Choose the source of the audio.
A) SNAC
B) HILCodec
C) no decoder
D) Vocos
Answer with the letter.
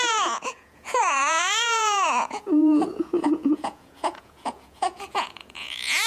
D